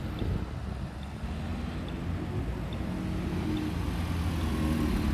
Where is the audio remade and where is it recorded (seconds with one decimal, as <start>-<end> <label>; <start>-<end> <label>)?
0.0-5.1 recorded